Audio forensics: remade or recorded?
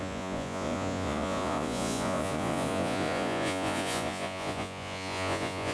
remade